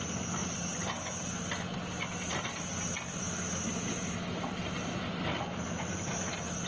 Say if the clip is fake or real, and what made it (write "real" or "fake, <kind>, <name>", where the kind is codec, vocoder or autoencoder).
real